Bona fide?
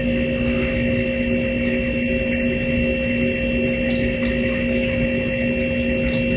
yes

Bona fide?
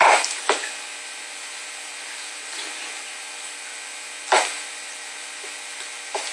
no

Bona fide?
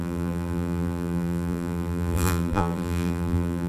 no